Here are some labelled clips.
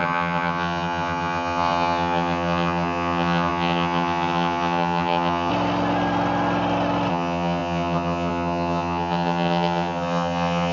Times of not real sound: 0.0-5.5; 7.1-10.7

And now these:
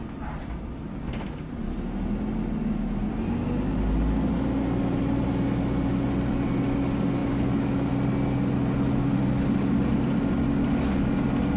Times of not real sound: none

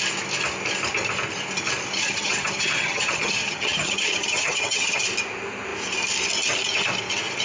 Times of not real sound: 2.0-5.0

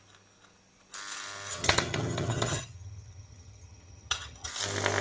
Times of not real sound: 1.5-4.5

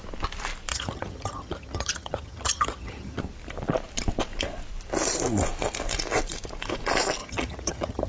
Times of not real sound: 0.7-3.2; 7.2-8.1

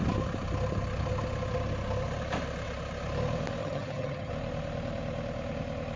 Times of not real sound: 3.6-4.3

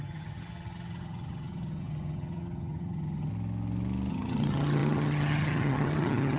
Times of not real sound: 0.0-3.3; 4.1-6.4

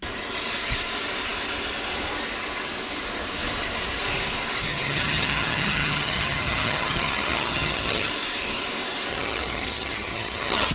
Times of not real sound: 4.7-8.1; 9.1-10.7